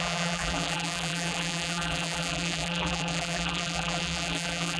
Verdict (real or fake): fake